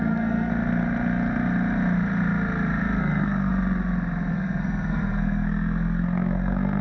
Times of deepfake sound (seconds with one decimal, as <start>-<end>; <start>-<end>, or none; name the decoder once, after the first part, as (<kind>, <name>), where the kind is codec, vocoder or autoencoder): 0.0-0.5 (codec, SNAC); 3.0-3.5; 4.3-6.8